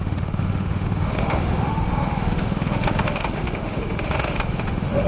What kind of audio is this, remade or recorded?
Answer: remade